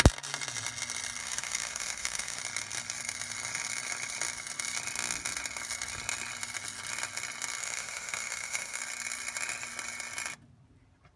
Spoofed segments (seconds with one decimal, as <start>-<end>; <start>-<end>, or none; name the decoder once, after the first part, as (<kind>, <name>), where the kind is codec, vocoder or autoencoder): 1.2-2.4 (autoencoder, DAC-VAE); 7.6-8.8